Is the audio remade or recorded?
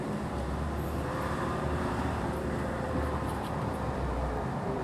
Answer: remade